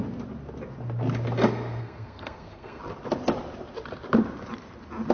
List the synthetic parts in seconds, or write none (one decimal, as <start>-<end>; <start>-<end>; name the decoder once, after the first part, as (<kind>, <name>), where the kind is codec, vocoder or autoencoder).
1.8-2.8 (codec, SNAC)